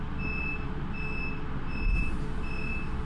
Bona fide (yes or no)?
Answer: yes